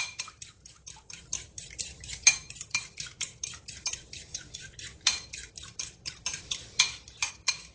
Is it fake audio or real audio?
fake